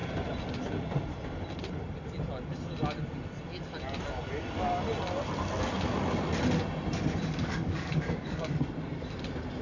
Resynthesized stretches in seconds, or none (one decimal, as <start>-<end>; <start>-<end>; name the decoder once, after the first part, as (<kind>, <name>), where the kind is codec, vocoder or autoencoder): 7.2-8.5 (codec, DAC)